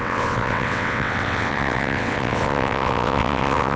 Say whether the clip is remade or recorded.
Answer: remade